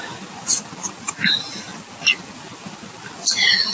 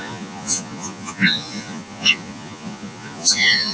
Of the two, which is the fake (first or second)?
second